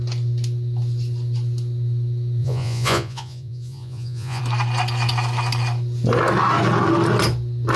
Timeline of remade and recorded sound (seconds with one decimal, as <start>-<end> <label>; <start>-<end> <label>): 0.0-2.4 recorded; 2.4-4.4 remade; 4.4-7.8 recorded